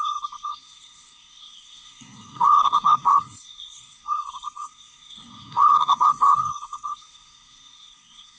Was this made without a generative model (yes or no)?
no